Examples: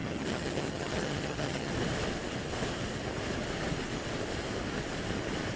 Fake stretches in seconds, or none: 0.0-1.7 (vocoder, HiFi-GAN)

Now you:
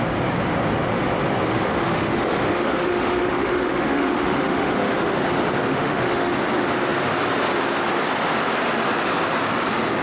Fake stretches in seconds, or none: 1.5-5.2 (autoencoder, DAC-VAE); 5.7-6.3

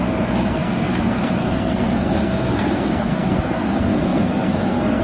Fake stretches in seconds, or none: 0.0-5.0 (codec, SNAC)

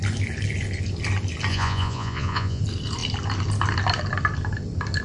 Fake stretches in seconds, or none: 1.5-2.6 (vocoder, Vocos)

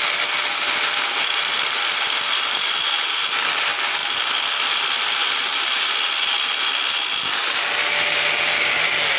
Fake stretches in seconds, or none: none